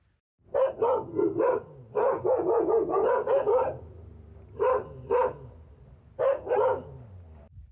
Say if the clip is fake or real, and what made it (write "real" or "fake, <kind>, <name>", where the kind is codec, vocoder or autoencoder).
real